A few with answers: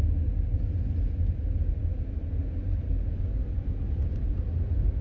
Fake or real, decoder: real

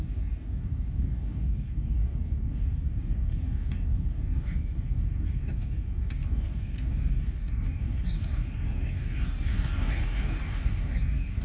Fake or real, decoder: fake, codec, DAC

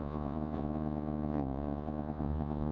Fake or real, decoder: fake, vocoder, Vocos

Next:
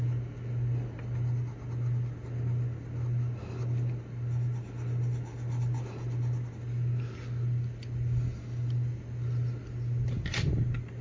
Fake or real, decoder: real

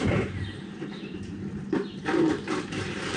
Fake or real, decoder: fake, vocoder, BigVGAN v2